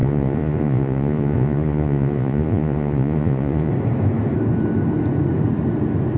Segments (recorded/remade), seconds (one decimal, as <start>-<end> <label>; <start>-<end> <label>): 0.0-3.7 remade; 3.7-6.2 recorded